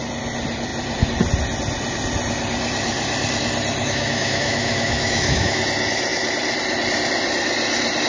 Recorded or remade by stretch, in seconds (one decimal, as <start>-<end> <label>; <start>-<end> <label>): 0.0-3.8 recorded; 3.8-5.6 remade; 5.6-8.1 recorded